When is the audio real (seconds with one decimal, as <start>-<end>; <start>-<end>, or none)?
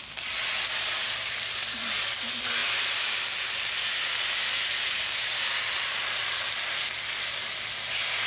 0.0-8.3